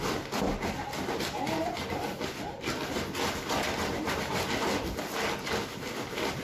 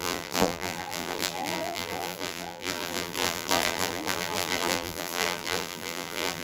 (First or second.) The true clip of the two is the first